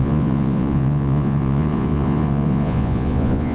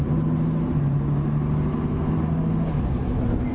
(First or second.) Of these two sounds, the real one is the second